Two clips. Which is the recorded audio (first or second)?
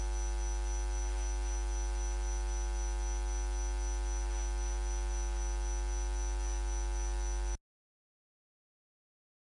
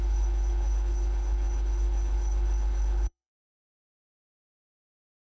first